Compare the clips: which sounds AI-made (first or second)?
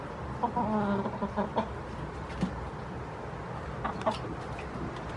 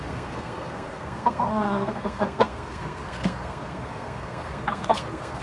second